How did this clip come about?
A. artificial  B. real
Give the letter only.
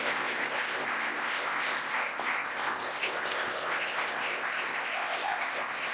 A